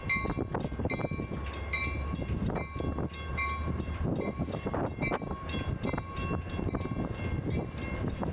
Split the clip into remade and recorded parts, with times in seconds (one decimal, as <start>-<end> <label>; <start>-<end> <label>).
0.0-3.3 recorded; 3.3-4.8 remade; 4.8-8.3 recorded